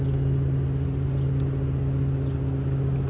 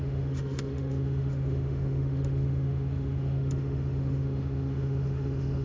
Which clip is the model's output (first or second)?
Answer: second